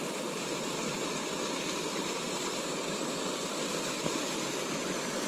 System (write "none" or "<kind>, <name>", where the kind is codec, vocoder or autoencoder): none